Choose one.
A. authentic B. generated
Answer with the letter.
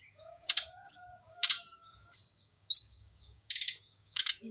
B